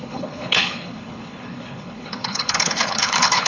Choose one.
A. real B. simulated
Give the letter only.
B